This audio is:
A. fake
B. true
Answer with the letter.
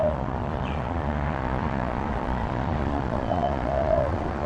A